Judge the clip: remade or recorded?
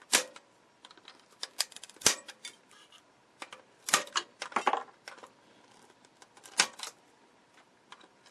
remade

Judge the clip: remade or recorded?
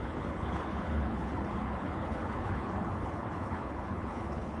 remade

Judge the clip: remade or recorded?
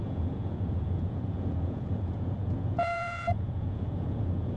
remade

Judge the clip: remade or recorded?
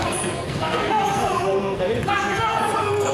remade